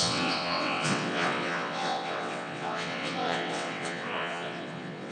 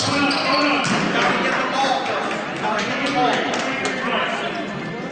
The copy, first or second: first